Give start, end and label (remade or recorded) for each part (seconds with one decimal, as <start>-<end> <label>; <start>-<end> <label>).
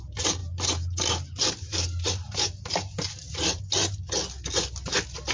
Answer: 0.0-0.4 recorded; 0.4-3.6 remade; 3.6-5.3 recorded